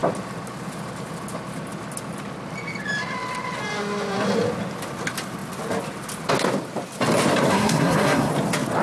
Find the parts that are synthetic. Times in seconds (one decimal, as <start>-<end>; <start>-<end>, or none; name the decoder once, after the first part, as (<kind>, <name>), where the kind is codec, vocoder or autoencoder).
7.5-8.3 (codec, SNAC)